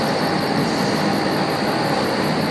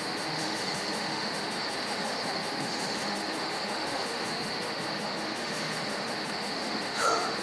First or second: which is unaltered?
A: first